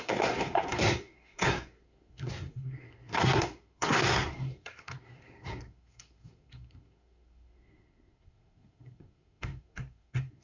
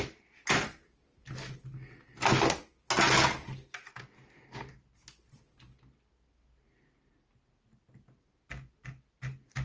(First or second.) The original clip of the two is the second